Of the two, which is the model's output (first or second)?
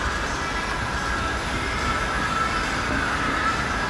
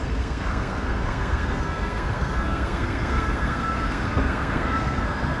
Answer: second